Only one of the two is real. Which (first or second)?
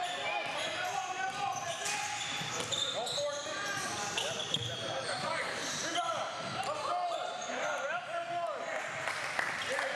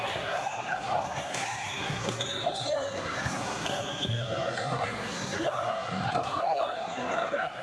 first